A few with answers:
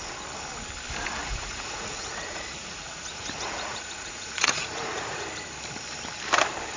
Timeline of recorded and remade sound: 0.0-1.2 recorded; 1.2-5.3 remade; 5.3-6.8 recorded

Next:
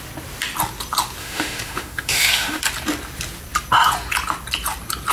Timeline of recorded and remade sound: 0.0-1.2 recorded; 1.2-2.6 remade; 2.6-5.1 recorded